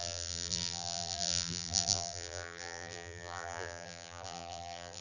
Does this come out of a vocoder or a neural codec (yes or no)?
yes